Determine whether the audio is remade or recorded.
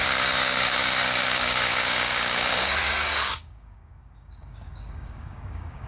remade